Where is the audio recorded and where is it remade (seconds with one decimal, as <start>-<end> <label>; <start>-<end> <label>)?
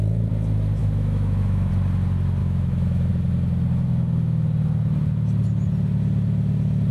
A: 0.0-0.8 recorded; 0.8-1.7 remade; 1.7-2.4 recorded; 2.4-3.1 remade; 3.1-6.9 recorded